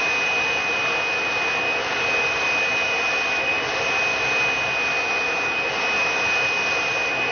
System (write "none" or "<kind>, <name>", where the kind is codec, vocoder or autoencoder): none